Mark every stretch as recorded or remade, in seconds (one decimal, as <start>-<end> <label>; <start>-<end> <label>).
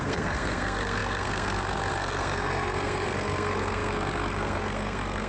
0.0-5.3 remade